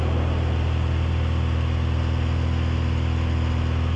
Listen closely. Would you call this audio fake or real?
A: real